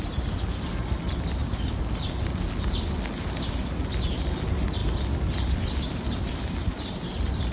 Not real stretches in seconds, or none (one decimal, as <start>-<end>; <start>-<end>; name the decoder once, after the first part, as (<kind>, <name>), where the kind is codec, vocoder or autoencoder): none